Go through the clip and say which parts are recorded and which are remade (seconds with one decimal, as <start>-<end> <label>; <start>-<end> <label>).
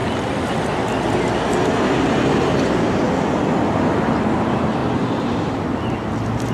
0.0-4.8 recorded; 4.8-5.4 remade; 5.4-6.5 recorded